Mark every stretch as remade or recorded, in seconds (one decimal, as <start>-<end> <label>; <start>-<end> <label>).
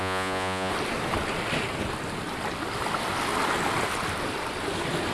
0.0-0.7 remade; 0.7-5.1 recorded